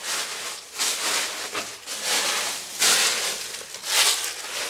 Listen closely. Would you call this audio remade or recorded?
recorded